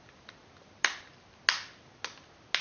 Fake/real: real